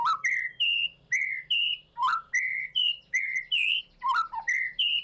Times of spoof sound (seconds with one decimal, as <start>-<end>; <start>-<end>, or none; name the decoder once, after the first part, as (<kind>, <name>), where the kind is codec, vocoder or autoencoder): 2.5-3.8 (vocoder, BigVGAN v2)